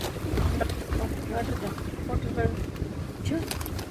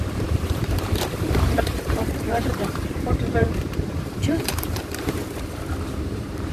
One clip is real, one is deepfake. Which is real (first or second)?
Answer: first